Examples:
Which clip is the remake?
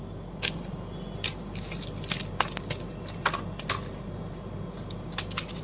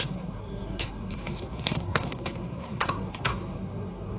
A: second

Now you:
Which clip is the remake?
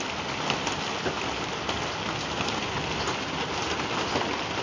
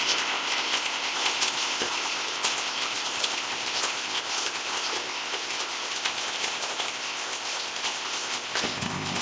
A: second